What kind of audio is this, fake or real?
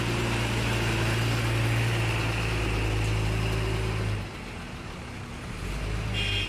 real